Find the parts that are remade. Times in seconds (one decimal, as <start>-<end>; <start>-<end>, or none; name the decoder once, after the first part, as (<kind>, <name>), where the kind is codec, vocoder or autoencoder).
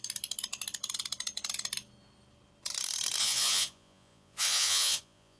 3.2-5.4 (vocoder, Vocos)